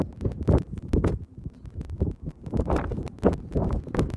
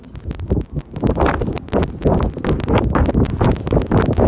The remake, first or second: first